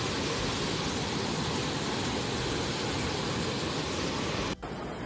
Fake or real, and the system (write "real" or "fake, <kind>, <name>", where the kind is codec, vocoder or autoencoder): real